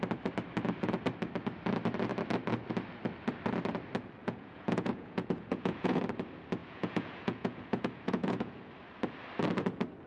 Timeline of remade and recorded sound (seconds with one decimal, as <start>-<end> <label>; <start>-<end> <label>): 0.0-4.2 recorded; 4.2-6.0 remade; 6.0-6.6 recorded; 6.6-8.7 remade; 8.7-10.1 recorded